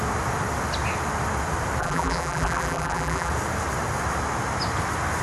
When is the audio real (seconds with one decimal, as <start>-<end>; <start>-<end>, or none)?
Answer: 0.0-1.8; 3.3-5.2